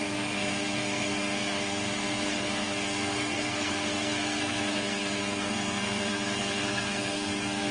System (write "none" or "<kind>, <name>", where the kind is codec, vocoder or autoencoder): codec, SNAC